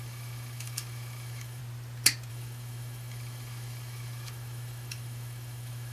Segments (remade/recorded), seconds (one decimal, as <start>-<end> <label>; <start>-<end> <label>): 0.0-1.6 remade; 1.6-2.3 recorded; 2.3-5.9 remade

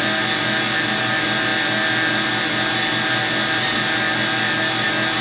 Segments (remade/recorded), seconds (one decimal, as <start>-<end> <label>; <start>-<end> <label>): 0.0-5.2 recorded